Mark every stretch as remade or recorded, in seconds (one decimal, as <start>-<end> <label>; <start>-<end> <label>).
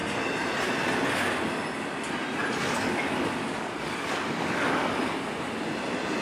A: 0.0-2.6 recorded; 2.6-5.0 remade; 5.0-6.2 recorded